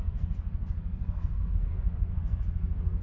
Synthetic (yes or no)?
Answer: yes